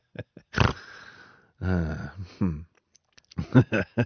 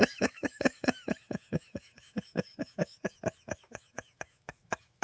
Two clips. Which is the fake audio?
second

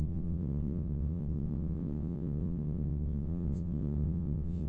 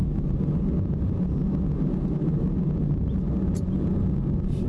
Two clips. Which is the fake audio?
first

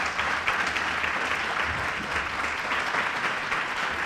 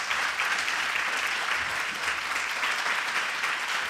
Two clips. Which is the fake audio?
second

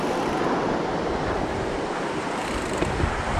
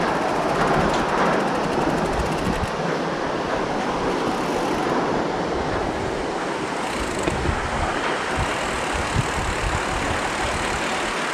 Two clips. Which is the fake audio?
first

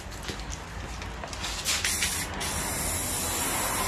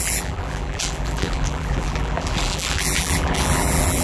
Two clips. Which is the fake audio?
second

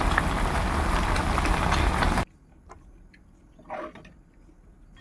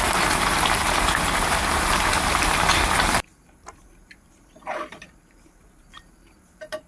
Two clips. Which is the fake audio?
second